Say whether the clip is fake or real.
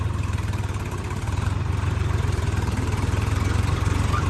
fake